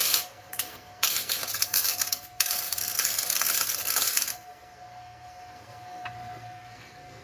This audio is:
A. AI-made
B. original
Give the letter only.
A